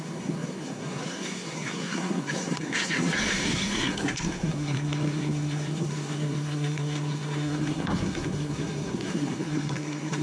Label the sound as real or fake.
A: fake